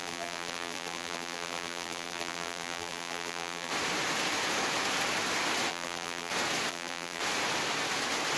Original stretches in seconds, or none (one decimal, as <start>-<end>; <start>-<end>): 3.7-5.7; 6.3-6.7; 7.2-8.4